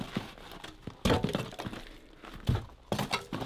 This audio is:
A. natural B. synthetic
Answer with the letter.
A